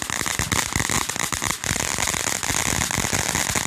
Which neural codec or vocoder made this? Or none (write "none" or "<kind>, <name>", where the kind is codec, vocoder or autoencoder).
none